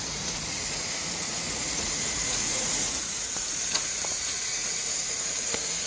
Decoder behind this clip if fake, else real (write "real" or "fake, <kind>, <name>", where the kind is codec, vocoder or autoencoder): fake, vocoder, Vocos